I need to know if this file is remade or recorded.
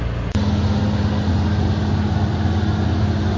recorded